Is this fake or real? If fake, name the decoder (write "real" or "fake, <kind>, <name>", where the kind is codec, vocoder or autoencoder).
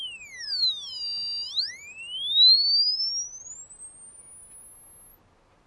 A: real